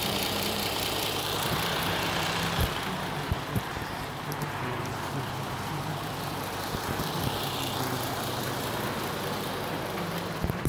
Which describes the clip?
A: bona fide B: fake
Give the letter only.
B